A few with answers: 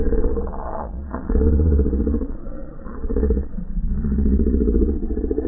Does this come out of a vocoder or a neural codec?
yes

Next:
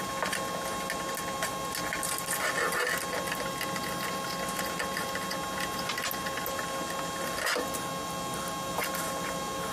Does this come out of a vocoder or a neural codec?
no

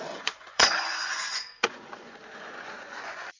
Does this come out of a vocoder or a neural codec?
yes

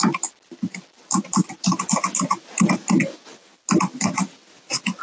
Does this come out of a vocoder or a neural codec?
no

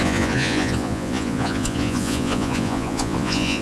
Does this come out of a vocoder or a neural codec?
yes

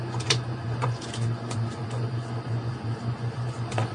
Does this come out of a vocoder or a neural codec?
yes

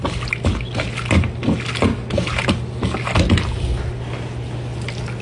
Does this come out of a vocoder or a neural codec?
no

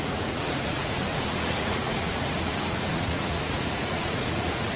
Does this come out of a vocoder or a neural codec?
yes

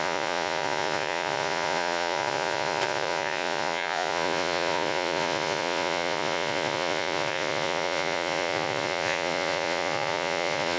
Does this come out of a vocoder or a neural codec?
yes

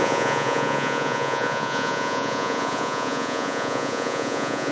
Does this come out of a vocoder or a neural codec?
yes